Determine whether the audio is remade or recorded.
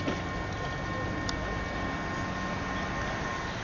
recorded